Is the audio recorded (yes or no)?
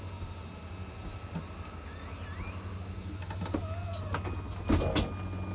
yes